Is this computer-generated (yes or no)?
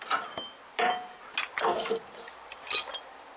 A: no